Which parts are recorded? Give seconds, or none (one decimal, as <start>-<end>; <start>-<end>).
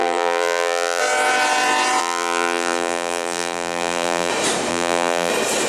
1.0-2.0; 4.3-4.7; 5.3-5.7